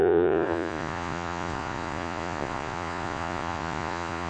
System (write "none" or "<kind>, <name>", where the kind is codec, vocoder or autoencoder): vocoder, Vocos